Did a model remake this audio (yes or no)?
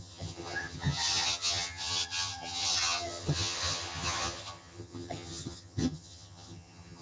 yes